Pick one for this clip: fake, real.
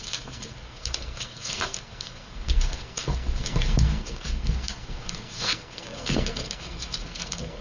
fake